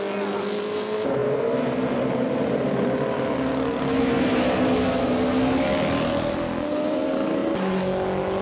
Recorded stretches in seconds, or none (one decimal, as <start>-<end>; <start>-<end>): 0.0-8.4